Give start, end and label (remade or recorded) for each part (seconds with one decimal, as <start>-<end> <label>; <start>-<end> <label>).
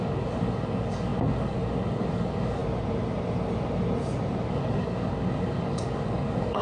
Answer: 0.0-2.6 remade; 2.6-4.5 recorded; 4.5-6.6 remade